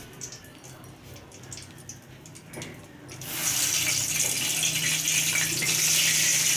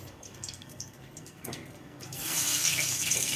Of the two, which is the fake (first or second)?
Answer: second